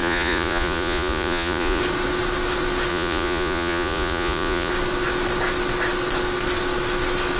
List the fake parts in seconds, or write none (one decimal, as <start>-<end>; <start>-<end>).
0.0-1.8; 2.9-4.7